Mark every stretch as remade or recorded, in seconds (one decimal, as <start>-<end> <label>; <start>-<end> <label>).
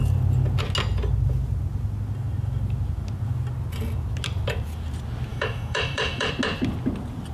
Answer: 0.0-5.3 recorded; 5.3-6.3 remade; 6.3-7.3 recorded